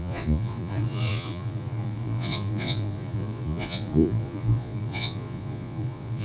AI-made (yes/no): yes